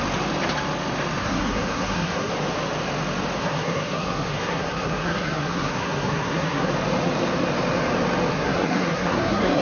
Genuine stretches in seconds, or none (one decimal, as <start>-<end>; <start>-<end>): 0.0-1.2; 2.3-3.4; 6.7-8.3